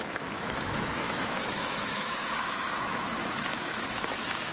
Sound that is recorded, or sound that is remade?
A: remade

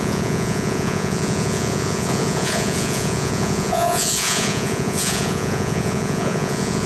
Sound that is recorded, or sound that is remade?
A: remade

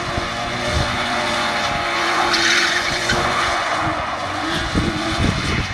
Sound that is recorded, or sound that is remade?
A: remade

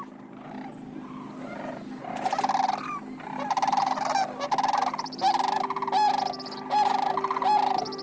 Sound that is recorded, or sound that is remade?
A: recorded